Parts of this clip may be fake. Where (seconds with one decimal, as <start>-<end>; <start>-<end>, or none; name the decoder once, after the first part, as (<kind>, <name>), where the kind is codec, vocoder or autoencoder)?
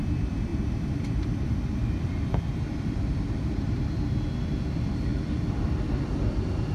0.0-5.1 (vocoder, BigVGAN v2); 6.1-6.7